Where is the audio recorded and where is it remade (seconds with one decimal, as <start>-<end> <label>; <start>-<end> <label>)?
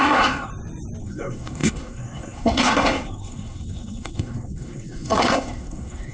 0.0-0.5 remade; 0.5-1.0 recorded; 1.0-6.1 remade